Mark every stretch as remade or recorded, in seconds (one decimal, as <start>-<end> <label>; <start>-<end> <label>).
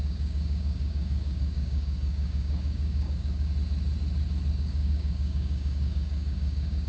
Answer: 0.0-3.5 remade; 3.5-4.5 recorded; 4.5-6.9 remade